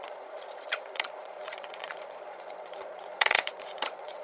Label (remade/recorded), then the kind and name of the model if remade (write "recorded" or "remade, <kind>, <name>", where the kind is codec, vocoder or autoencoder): remade, vocoder, Vocos